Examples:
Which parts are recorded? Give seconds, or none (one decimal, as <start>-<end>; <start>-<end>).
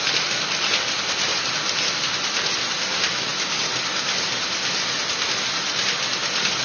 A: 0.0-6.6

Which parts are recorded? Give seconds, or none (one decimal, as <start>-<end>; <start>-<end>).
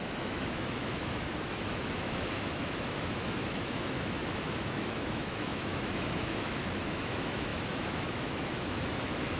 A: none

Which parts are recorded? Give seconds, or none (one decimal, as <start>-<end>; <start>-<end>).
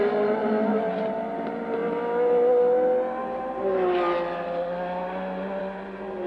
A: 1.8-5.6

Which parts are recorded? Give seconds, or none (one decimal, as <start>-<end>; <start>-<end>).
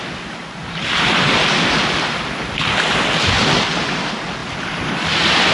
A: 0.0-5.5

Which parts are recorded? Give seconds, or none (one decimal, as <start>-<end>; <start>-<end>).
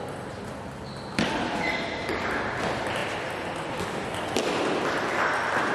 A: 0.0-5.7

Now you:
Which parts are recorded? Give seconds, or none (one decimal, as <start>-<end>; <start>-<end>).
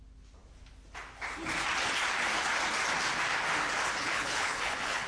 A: 0.0-4.0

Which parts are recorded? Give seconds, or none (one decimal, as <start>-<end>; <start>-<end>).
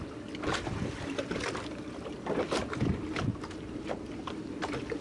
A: 0.0-3.3; 4.5-5.0